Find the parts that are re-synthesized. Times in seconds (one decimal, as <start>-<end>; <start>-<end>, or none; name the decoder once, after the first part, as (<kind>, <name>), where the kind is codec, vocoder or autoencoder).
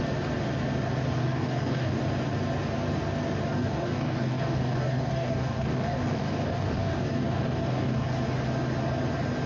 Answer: 1.2-2.0 (codec, DAC); 3.5-8.1